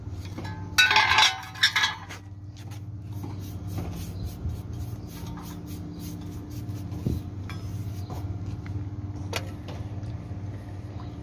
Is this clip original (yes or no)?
yes